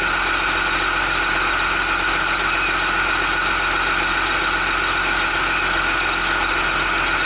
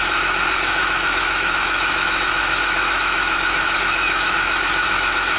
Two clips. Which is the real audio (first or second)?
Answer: first